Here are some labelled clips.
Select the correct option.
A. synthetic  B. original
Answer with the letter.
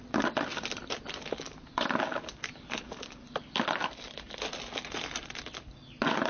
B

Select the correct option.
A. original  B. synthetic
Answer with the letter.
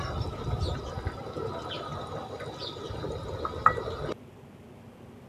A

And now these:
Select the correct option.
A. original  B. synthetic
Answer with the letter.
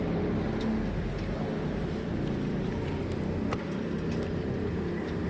A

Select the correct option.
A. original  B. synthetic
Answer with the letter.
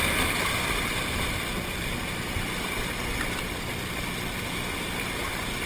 A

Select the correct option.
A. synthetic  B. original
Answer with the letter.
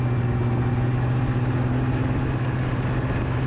B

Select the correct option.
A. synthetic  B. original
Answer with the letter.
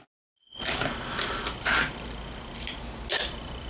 B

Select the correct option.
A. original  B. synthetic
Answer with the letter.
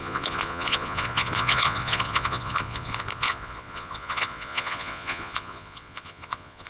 B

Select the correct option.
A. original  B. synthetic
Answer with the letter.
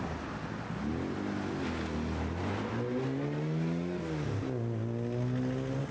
A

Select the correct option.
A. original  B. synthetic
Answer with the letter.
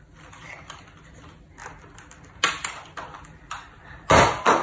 A